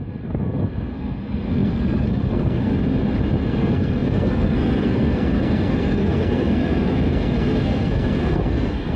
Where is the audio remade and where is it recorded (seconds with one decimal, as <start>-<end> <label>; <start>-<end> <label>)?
0.0-2.7 remade; 2.7-3.4 recorded; 3.4-9.0 remade